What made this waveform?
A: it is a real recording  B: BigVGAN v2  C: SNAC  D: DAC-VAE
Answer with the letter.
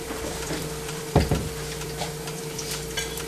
B